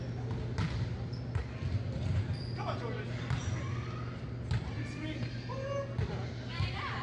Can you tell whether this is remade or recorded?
recorded